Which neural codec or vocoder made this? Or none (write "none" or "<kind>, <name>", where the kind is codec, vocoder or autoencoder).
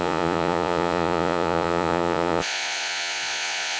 vocoder, Vocos